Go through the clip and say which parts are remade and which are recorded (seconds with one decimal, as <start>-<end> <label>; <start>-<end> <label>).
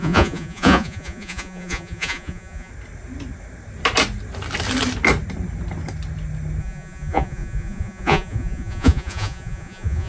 0.0-2.7 remade; 2.7-6.6 recorded; 6.6-10.1 remade